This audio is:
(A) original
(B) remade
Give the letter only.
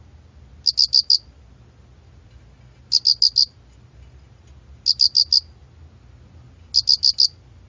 A